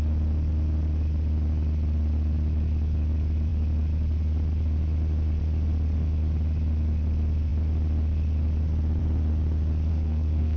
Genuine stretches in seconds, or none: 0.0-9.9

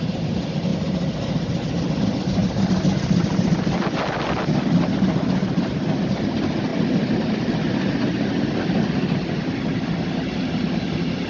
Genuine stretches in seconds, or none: 0.0-11.3

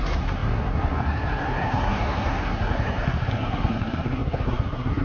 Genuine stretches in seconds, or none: none

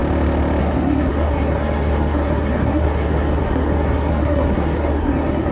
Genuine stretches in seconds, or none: 0.0-0.6

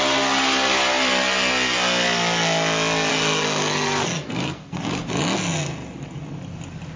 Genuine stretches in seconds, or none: 0.0-3.1; 5.1-7.0

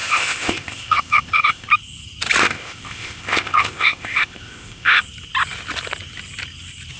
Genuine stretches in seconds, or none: 1.7-2.4; 5.0-7.0